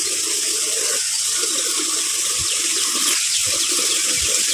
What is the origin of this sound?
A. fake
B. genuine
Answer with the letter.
B